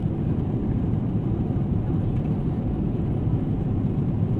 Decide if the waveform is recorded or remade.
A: remade